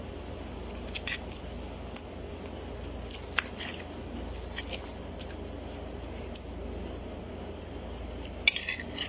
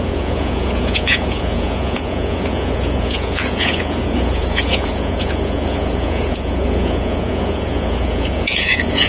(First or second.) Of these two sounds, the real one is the first